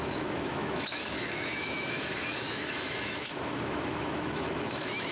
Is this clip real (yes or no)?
no